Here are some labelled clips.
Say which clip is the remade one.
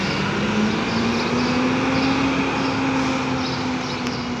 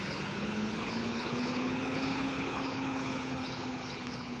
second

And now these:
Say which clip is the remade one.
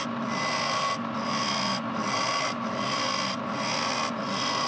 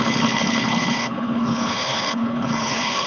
second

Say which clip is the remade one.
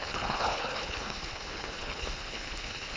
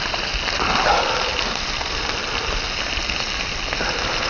first